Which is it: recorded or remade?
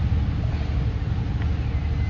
recorded